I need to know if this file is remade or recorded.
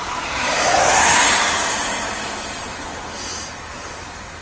remade